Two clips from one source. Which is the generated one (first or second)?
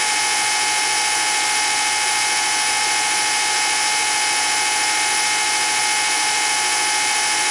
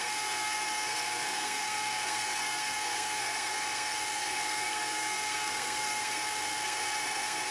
second